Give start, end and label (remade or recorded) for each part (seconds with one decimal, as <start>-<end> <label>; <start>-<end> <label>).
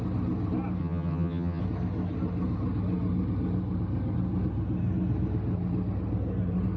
0.0-0.8 recorded; 0.8-1.6 remade; 1.6-6.8 recorded